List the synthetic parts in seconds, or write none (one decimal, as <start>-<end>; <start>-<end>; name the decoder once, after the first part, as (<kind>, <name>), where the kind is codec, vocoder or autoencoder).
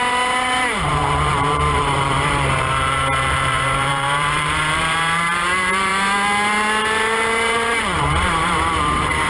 0.0-5.9 (vocoder, BigVGAN v2); 6.8-9.3